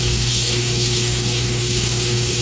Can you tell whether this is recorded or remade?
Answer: remade